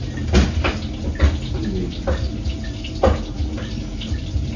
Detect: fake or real real